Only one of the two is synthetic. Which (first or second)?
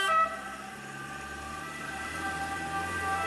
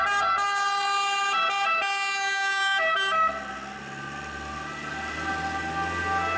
first